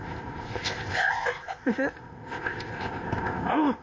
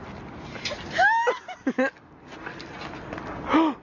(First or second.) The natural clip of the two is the second